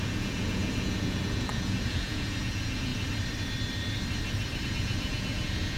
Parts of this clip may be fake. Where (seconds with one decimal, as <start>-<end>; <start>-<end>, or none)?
0.0-2.9; 4.6-5.8

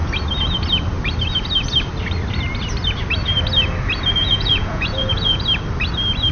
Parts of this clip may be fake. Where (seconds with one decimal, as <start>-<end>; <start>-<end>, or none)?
4.2-5.4

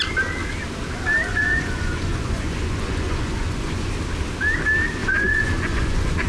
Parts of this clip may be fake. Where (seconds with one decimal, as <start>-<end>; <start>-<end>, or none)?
1.3-3.9; 5.0-6.3

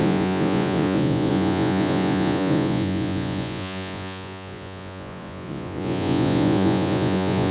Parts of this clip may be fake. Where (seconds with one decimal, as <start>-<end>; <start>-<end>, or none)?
0.0-7.5

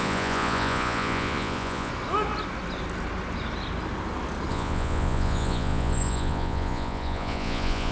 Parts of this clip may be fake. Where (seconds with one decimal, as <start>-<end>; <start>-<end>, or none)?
0.0-1.9; 4.5-7.9

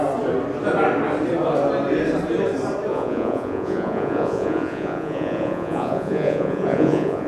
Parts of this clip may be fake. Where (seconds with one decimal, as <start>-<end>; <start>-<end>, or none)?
2.9-7.3